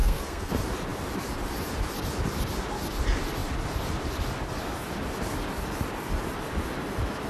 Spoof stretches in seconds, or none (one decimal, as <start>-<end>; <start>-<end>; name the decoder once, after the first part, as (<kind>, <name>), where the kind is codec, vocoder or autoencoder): 0.0-0.5 (codec, SNAC)